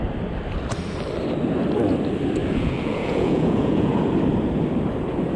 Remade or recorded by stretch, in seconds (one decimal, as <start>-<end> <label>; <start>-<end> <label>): 0.0-2.4 recorded; 2.4-3.9 remade; 3.9-5.4 recorded